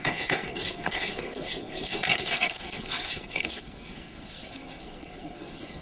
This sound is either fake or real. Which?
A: fake